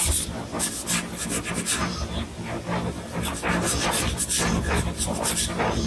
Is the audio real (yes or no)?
yes